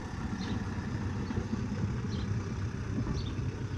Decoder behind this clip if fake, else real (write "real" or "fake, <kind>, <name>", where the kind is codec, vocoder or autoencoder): real